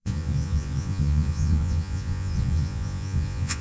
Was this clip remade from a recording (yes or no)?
yes